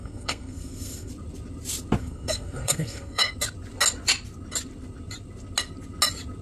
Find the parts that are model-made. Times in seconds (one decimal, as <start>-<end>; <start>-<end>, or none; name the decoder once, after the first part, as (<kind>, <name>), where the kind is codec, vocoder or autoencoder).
0.0-1.1 (codec, SNAC); 2.0-3.3